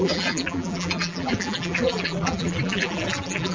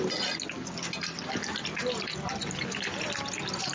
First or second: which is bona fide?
second